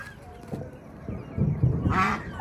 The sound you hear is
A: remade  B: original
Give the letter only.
B